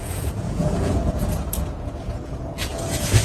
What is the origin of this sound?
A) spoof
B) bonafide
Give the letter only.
A